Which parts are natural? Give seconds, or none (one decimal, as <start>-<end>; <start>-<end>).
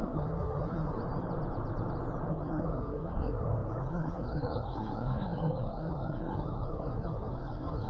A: 1.0-2.3